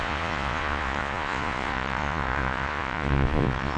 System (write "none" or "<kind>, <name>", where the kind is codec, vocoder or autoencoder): vocoder, Vocos